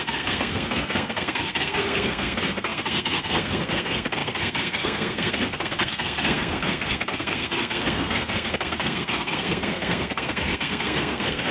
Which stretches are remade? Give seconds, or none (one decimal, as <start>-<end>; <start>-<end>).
0.0-11.5